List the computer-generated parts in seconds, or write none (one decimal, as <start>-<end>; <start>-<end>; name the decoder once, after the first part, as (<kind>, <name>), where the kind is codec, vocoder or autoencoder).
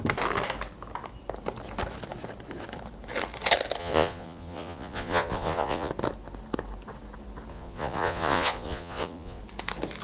3.8-5.9 (vocoder, Vocos); 7.5-9.4